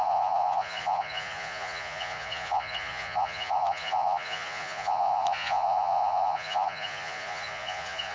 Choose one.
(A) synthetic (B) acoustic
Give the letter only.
A